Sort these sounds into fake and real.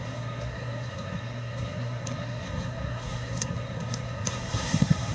fake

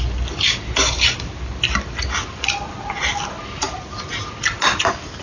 real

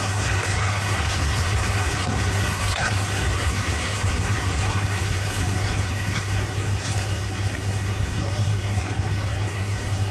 fake